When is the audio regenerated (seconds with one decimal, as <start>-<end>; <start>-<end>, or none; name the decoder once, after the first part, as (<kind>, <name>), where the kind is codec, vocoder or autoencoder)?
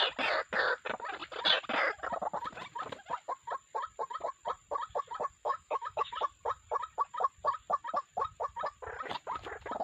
5.4-6.1 (autoencoder, DAC-VAE)